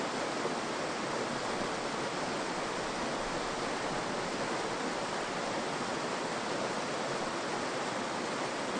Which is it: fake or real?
real